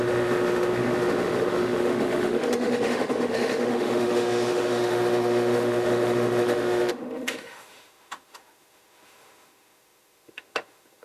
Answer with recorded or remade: remade